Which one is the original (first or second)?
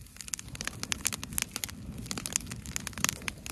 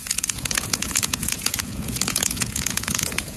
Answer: first